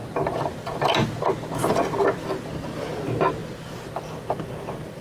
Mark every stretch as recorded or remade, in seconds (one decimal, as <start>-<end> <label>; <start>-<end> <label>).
0.0-5.0 recorded